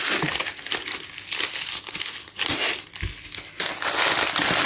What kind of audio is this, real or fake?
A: real